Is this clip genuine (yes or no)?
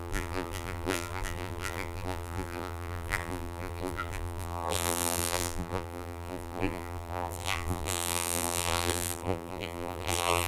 no